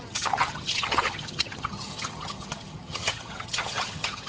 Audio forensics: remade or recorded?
remade